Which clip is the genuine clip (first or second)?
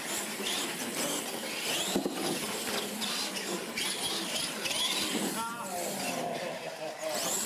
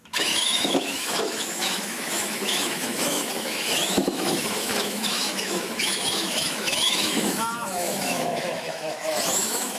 first